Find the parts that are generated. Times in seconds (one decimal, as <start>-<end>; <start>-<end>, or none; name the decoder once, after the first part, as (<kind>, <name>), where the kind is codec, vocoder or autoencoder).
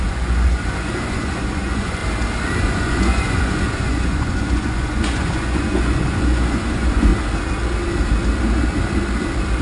0.0-2.0 (vocoder, Vocos); 2.6-7.1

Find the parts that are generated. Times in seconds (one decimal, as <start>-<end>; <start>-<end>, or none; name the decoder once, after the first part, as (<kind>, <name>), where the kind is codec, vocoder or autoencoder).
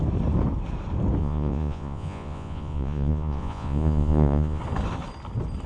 1.2-4.6 (vocoder, Vocos)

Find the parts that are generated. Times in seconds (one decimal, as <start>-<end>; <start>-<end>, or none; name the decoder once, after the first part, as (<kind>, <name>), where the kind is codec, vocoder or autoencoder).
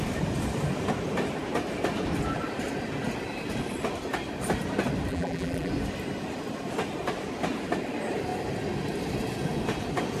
5.1-5.7 (vocoder, BigVGAN v2)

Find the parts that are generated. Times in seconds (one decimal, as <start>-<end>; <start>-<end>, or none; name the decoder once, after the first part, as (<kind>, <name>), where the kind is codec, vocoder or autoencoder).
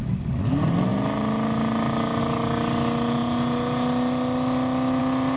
none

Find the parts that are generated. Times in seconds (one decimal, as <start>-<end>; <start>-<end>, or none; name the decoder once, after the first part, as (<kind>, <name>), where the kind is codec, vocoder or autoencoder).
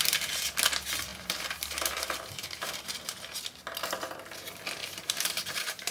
1.1-2.9 (vocoder, BigVGAN v2); 4.8-5.9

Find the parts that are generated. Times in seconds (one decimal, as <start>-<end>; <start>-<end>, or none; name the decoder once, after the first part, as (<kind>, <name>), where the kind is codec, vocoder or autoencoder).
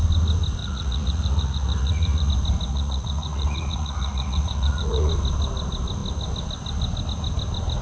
0.6-2.3 (vocoder, Vocos); 2.7-5.1